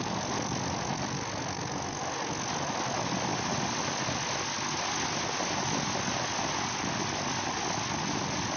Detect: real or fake real